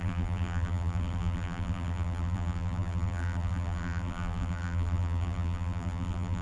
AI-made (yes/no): yes